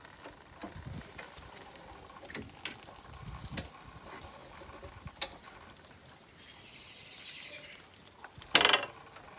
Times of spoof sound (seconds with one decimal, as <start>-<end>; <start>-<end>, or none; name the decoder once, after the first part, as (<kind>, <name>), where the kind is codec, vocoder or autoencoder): none